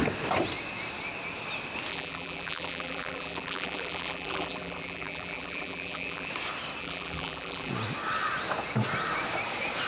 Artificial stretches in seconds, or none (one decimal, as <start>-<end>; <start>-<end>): 1.9-6.3; 6.8-7.7